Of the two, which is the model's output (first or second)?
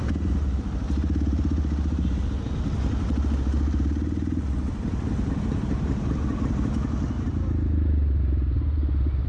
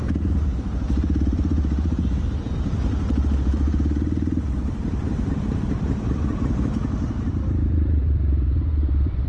second